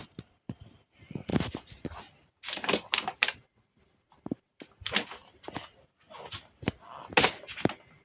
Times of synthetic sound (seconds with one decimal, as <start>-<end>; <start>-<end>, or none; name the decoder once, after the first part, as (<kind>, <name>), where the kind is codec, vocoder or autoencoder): 1.3-4.6 (vocoder, BigVGAN v2)